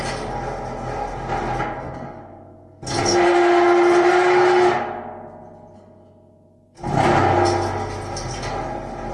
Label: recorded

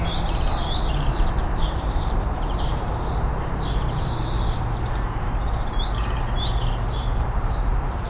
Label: remade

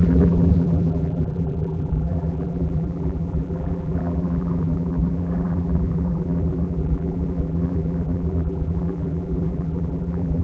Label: remade